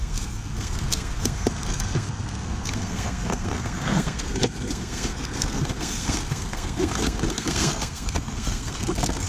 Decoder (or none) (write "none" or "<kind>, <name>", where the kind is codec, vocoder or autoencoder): codec, SNAC